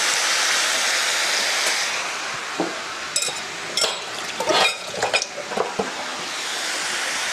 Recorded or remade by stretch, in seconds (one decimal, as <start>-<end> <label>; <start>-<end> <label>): 0.0-4.5 recorded; 4.5-5.1 remade; 5.1-7.3 recorded